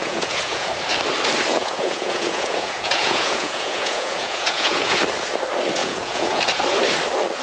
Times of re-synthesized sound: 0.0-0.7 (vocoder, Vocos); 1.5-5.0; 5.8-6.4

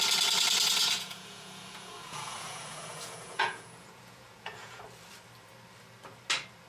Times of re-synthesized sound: 0.8-4.8 (vocoder, Vocos)

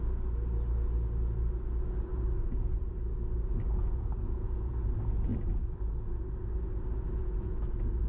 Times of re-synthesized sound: 2.1-2.8 (vocoder, Vocos); 3.8-4.8; 5.3-6.2; 7.2-8.1

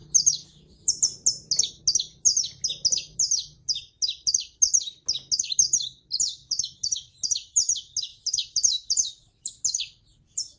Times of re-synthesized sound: none

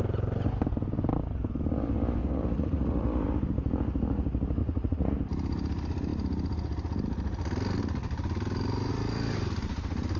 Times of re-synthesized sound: 2.2-3.3 (vocoder, Vocos); 4.6-5.1

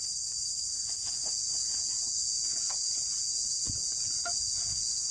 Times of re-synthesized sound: 0.0-5.1 (vocoder, Vocos)

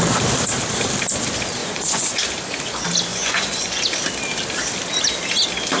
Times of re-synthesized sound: 1.6-2.2 (vocoder, Vocos); 3.1-3.8